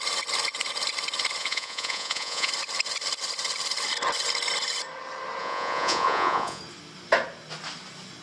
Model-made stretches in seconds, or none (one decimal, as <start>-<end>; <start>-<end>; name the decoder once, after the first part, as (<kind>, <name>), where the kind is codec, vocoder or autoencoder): 1.4-2.5 (vocoder, Vocos); 5.4-6.6